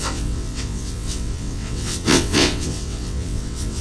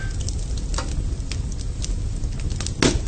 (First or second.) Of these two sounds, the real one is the second